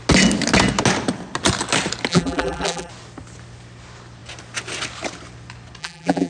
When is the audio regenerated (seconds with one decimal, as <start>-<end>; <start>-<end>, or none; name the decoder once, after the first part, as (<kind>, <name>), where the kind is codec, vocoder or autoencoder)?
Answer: 2.1-2.9 (vocoder, BigVGAN v2); 5.8-6.3